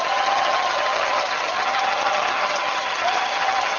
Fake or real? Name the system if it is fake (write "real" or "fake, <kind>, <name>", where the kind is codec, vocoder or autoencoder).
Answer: fake, vocoder, HiFi-GAN